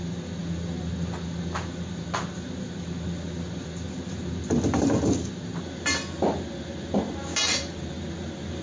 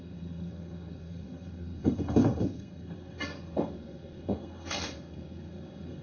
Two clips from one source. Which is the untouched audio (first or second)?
first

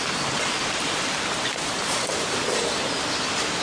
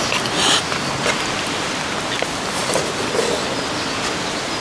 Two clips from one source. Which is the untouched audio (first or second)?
second